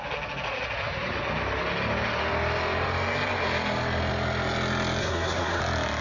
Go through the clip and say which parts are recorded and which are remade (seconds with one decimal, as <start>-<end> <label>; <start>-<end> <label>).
0.0-5.0 recorded; 5.0-5.6 remade; 5.6-6.0 recorded